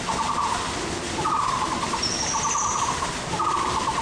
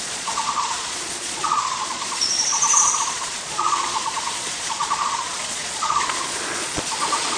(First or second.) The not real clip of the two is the second